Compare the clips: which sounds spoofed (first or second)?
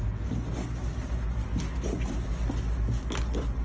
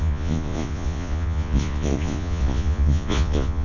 second